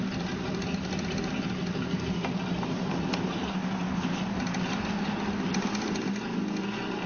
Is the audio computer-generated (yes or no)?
no